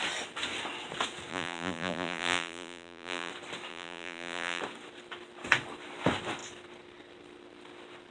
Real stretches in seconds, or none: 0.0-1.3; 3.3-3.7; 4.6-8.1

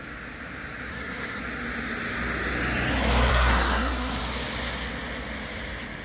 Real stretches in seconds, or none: 0.0-0.9; 1.4-3.3; 4.2-6.0

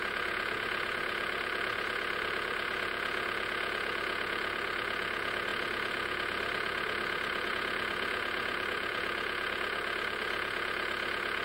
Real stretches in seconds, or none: none